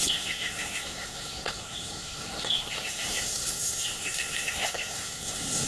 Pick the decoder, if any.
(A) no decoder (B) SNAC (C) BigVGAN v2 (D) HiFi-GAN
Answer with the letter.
B